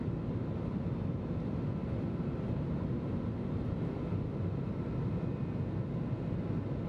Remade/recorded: recorded